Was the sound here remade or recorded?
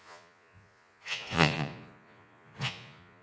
remade